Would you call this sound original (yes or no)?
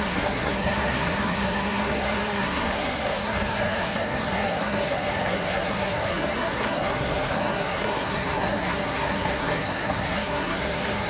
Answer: no